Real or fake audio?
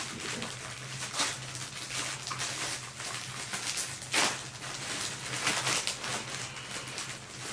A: real